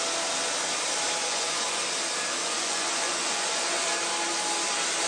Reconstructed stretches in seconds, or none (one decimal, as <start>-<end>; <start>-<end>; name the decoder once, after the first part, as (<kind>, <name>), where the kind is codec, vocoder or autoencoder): 1.2-1.8 (vocoder, Vocos); 2.4-3.9